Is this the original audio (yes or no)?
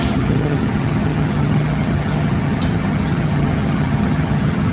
no